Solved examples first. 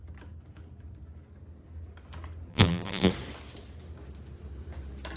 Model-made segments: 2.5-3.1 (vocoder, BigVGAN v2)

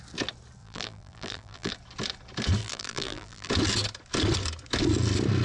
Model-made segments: 0.6-1.7 (vocoder, BigVGAN v2); 2.6-3.5

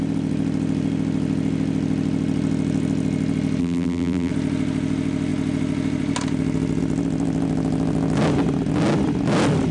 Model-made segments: 3.6-4.3 (vocoder, BigVGAN v2)

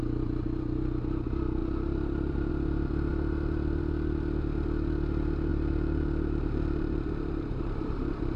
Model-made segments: 1.6-2.5 (vocoder, BigVGAN v2); 5.5-8.4

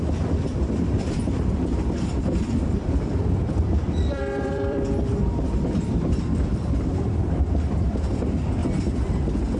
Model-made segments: 0.0-8.6 (vocoder, BigVGAN v2)

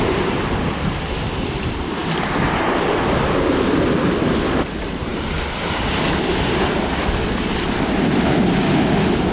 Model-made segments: none

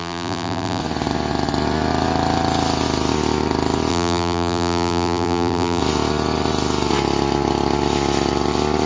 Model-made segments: 0.0-0.8 (vocoder, BigVGAN v2); 3.9-5.8

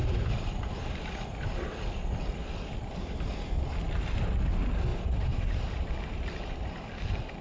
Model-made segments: 0.0-1.7 (vocoder, BigVGAN v2); 4.9-6.0